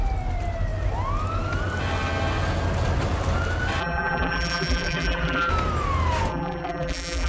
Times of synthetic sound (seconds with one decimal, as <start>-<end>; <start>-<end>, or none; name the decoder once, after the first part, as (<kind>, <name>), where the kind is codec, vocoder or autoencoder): 3.8-5.5 (vocoder, BigVGAN v2); 6.3-7.3